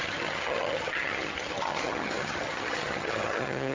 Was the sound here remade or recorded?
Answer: remade